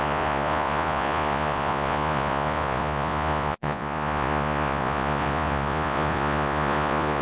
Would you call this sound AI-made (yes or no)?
yes